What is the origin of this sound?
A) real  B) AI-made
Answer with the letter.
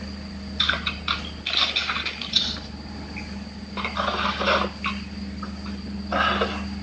A